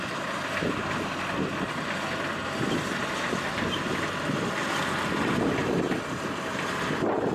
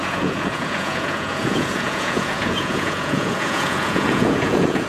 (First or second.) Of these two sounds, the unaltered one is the first